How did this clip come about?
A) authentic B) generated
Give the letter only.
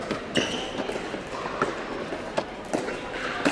A